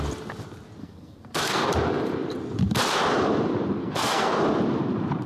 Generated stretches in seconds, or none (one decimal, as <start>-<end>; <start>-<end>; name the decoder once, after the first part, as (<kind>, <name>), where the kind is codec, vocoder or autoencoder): 0.8-1.7 (codec, SNAC); 3.8-4.4